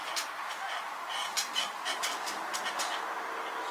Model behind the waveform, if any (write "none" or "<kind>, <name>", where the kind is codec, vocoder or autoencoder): none